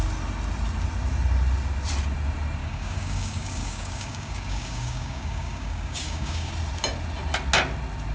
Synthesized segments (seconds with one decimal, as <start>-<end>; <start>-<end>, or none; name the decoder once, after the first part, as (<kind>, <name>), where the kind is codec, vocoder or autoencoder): 2.6-6.5 (codec, DAC)